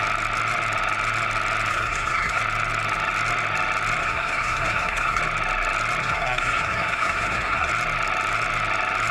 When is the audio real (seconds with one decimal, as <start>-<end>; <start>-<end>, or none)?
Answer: 0.0-1.7; 2.4-4.0; 5.2-6.0; 7.7-9.1